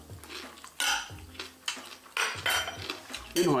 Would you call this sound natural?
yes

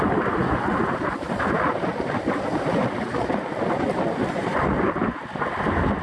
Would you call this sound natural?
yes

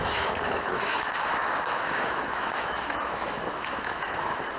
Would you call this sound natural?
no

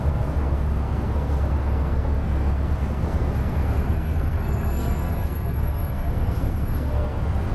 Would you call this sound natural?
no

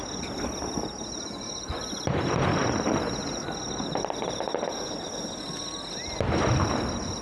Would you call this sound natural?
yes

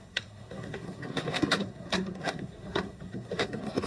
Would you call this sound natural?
no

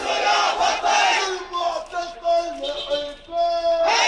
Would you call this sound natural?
yes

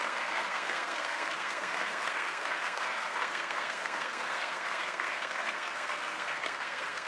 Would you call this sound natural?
no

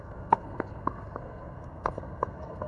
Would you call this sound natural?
no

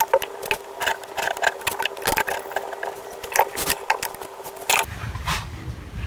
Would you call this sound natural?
yes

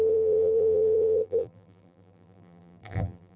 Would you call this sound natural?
no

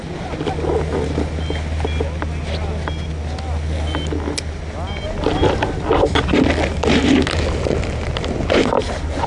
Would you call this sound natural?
yes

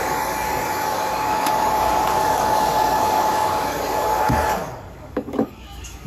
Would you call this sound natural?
no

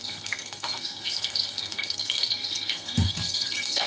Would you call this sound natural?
no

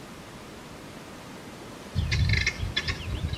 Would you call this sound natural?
yes